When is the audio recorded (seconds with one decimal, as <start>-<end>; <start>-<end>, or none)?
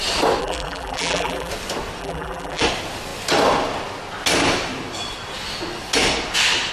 0.0-0.4; 1.5-2.0; 2.6-6.7